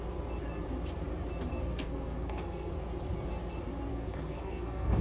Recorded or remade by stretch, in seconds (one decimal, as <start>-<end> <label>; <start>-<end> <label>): 0.0-1.5 recorded; 1.5-2.7 remade; 2.7-3.9 recorded; 3.9-5.0 remade